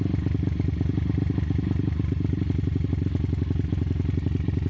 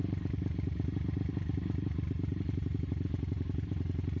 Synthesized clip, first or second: second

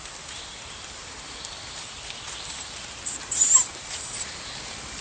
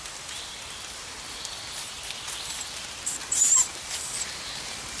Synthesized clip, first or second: first